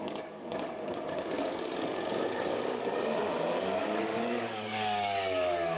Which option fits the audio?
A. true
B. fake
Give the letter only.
B